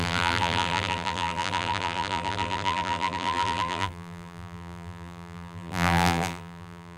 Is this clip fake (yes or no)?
yes